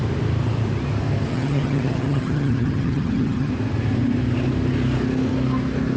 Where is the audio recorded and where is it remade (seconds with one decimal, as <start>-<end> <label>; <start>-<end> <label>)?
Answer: 0.0-1.3 recorded; 1.3-3.5 remade; 3.5-6.0 recorded